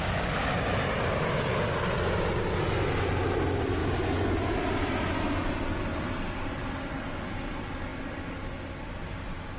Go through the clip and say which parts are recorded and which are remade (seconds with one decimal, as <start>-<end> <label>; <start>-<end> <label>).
0.0-9.6 recorded